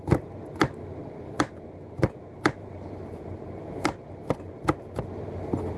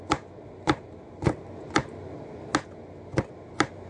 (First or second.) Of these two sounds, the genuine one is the second